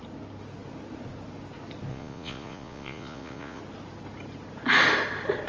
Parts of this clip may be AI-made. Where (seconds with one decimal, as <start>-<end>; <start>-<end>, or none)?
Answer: 1.9-3.6